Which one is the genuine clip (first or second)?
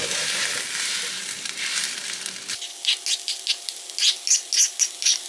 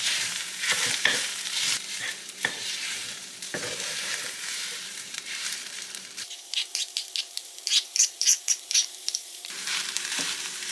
first